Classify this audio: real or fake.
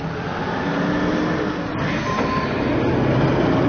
real